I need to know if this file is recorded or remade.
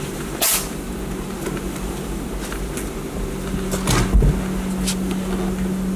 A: recorded